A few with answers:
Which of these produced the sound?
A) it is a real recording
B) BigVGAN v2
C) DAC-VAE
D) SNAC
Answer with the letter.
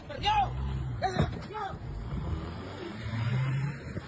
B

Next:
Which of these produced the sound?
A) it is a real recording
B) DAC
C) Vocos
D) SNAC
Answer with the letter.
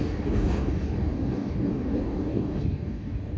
B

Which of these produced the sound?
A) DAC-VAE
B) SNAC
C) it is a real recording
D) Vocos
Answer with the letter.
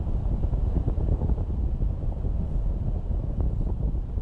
C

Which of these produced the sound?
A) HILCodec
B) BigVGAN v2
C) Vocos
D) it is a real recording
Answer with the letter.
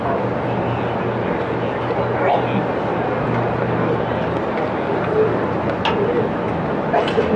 D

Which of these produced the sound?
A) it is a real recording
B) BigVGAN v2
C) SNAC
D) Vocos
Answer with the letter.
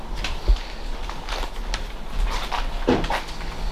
A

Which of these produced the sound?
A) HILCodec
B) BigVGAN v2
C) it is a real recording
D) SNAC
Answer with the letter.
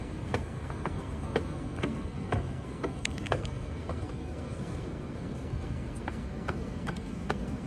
D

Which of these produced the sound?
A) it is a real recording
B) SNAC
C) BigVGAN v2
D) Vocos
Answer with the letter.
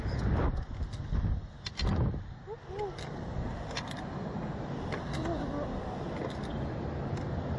A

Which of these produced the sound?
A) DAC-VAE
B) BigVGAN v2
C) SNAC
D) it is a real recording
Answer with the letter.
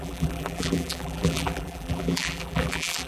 B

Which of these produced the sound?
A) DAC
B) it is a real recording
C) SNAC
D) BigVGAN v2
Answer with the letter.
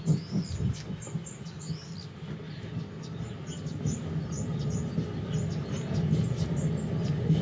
B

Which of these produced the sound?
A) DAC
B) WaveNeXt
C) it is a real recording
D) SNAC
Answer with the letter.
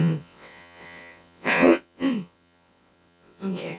B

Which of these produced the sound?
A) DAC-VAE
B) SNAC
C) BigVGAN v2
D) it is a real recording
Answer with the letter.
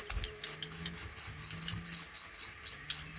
D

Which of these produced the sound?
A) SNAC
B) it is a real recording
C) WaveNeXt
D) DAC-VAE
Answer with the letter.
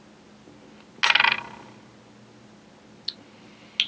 B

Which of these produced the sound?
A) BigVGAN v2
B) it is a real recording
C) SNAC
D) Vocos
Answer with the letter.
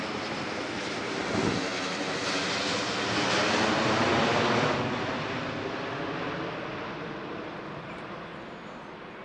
B